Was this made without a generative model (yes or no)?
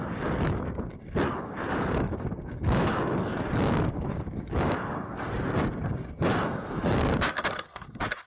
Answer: no